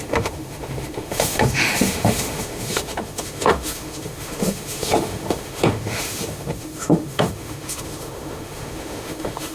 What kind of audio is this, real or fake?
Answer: fake